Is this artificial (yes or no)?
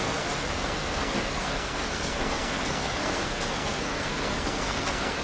yes